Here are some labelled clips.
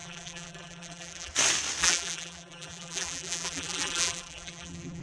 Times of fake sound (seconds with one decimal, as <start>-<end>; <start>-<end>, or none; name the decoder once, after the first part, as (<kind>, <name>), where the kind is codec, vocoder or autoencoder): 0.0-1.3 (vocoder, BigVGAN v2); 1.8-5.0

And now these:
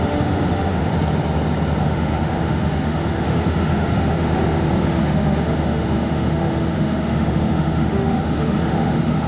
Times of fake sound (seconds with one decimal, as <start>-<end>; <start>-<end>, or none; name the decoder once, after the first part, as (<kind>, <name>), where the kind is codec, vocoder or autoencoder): 0.0-0.9 (autoencoder, DAC-VAE); 1.8-9.3

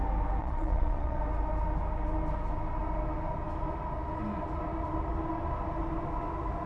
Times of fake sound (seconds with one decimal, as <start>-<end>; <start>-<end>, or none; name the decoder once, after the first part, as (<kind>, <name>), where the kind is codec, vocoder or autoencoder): 0.4-1.2 (vocoder, Vocos)

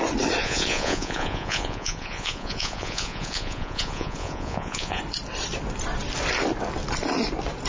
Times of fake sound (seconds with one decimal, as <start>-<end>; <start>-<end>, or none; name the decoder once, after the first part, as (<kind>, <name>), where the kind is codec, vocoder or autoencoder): 0.4-5.0 (vocoder, Vocos)

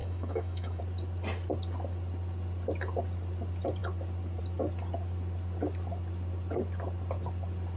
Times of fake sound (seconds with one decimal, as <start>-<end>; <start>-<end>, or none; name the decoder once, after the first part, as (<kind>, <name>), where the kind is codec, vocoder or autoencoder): 0.0-0.8 (autoencoder, DAC-VAE)

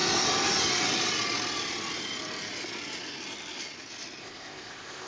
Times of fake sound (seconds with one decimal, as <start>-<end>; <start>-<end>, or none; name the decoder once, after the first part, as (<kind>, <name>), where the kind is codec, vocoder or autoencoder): 4.2-5.1 (codec, ZipCodec)

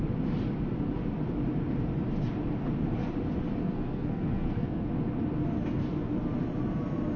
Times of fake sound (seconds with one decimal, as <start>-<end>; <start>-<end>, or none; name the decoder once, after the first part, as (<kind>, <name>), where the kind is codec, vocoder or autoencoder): 3.6-4.9 (codec, SNAC)